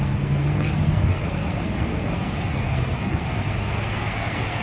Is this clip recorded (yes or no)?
no